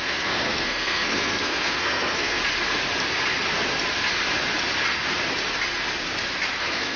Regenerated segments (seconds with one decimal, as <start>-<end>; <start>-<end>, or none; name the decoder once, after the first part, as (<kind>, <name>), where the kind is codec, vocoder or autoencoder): 0.0-2.4 (codec, SNAC); 6.6-7.0